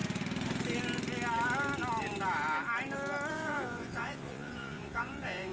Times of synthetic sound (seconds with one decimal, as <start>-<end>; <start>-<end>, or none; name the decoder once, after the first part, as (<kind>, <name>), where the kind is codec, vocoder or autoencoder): 3.3-5.5 (vocoder, Vocos)